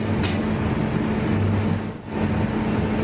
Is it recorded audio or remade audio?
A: recorded